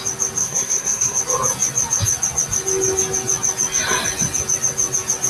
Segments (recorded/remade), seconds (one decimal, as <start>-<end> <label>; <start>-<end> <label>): 0.0-0.4 recorded; 0.4-1.2 remade; 1.2-5.3 recorded